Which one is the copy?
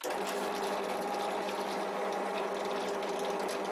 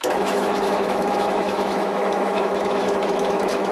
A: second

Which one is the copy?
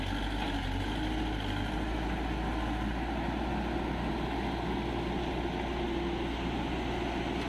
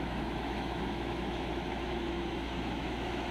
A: second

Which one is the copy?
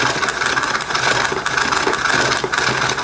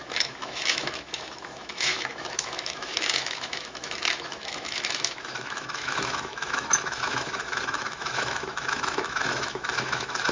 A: second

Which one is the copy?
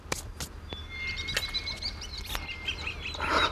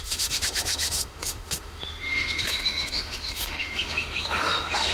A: second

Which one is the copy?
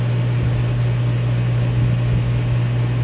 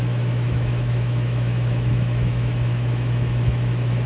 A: second